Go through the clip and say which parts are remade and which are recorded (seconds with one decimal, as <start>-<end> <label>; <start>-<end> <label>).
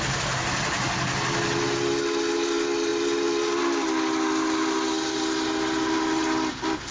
0.0-6.9 recorded